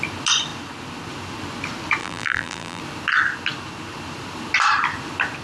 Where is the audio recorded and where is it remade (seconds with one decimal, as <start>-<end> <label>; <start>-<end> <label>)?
0.0-2.0 recorded; 2.0-2.8 remade; 2.8-5.4 recorded